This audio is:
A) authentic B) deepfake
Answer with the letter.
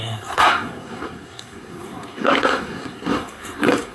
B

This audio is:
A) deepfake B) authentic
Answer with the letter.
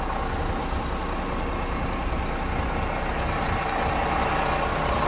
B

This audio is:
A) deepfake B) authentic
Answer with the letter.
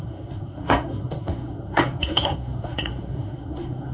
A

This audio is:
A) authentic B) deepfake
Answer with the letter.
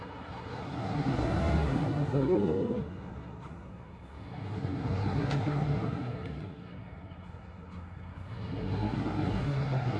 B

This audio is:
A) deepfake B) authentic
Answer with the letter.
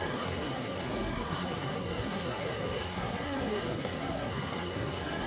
A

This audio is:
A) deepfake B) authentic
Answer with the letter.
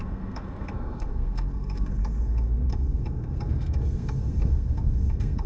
A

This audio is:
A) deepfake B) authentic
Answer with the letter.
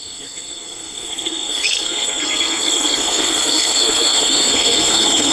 A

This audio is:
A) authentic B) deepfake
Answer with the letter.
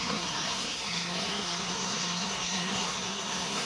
B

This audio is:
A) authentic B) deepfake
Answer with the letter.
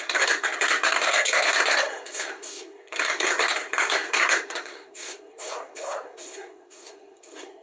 B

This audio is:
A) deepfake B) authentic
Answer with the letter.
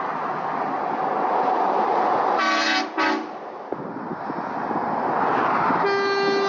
B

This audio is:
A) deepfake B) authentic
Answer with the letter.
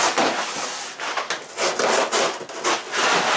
B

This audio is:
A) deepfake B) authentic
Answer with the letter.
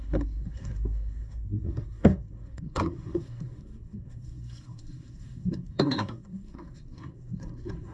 A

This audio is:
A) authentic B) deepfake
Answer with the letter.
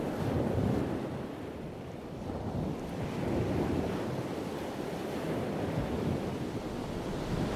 A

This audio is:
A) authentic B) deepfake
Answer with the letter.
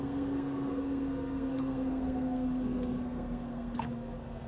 B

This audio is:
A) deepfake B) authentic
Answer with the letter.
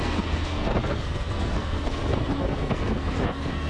A